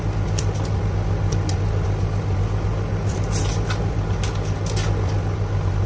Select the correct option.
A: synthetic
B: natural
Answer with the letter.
B